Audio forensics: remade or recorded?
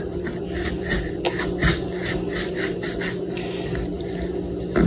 recorded